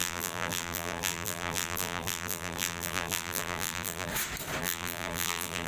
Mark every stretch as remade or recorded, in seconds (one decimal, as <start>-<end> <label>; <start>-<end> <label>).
0.0-4.1 remade; 4.1-4.6 recorded; 4.6-5.7 remade